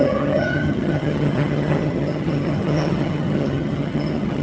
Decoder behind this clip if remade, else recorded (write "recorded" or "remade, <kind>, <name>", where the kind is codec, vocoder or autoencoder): remade, vocoder, HiFi-GAN